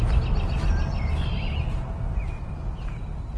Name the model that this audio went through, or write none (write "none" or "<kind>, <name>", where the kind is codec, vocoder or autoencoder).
none